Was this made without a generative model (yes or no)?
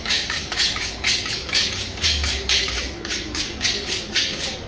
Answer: no